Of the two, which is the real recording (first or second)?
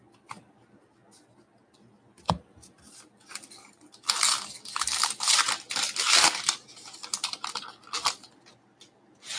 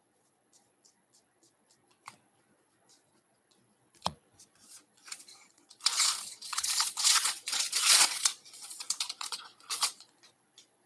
first